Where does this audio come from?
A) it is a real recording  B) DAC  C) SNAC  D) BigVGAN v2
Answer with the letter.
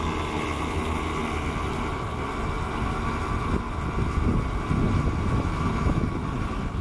A